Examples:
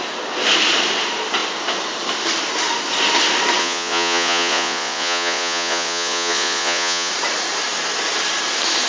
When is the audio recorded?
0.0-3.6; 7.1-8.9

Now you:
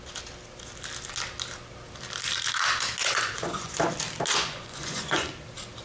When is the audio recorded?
0.0-3.0; 3.9-4.3; 5.3-5.8

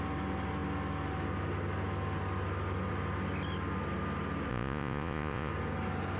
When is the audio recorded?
0.0-4.5; 5.5-6.2

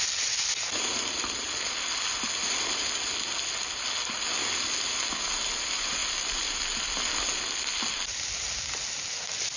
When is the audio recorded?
0.0-9.6

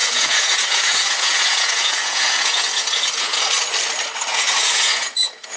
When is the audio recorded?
3.4-4.3

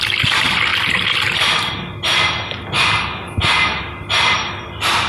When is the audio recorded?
0.0-5.1

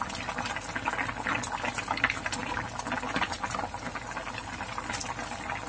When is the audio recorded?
0.0-5.7